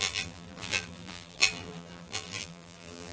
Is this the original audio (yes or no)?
no